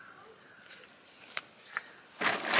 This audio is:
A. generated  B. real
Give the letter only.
B